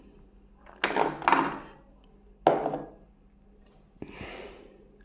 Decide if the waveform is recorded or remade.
recorded